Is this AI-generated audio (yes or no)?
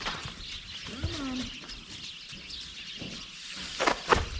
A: no